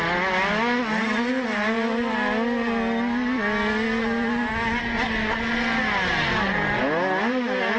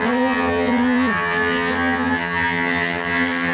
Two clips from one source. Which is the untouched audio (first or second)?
first